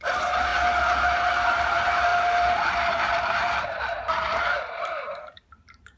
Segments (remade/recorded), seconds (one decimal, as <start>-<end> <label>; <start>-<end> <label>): 0.0-0.5 remade; 0.5-1.3 recorded; 1.3-6.0 remade